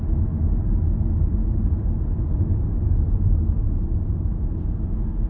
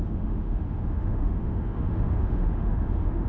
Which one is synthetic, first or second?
second